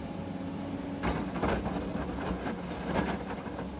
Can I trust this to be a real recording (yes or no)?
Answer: yes